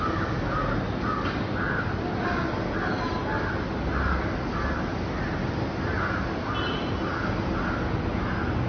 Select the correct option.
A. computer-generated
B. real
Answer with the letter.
B